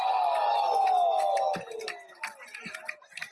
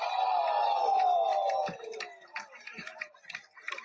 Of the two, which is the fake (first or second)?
second